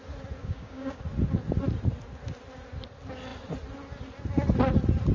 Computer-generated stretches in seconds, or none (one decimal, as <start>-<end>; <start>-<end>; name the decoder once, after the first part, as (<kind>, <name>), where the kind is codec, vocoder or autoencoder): 0.4-1.0 (codec, DAC)